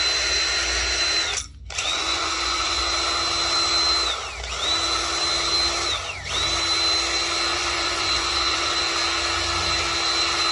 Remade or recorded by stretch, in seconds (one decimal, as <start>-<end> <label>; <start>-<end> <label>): 0.0-1.8 recorded; 1.8-2.8 remade; 2.8-7.5 recorded; 7.5-8.8 remade; 8.8-10.5 recorded

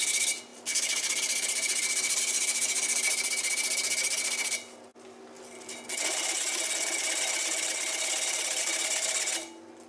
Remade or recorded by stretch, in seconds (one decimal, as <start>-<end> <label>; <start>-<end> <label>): 0.0-9.9 recorded

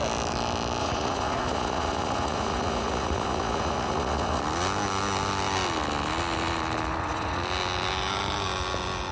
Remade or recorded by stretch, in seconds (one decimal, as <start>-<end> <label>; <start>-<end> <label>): 0.0-0.8 recorded; 0.8-4.4 remade; 4.4-6.9 recorded; 6.9-7.4 remade; 7.4-9.1 recorded

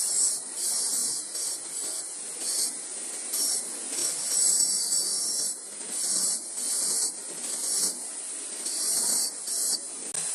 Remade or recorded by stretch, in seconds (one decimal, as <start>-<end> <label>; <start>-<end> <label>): 0.0-10.3 recorded